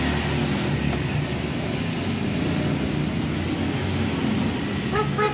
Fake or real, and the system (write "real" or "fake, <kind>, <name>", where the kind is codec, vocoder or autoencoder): real